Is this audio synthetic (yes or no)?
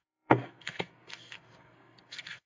yes